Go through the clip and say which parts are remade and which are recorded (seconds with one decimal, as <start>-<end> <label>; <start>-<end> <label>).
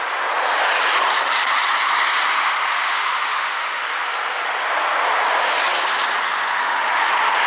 0.0-2.3 recorded; 2.3-3.8 remade; 3.8-6.6 recorded; 6.6-7.1 remade; 7.1-7.5 recorded